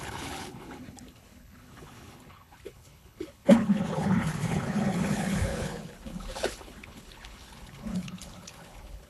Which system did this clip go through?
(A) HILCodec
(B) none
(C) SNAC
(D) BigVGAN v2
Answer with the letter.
A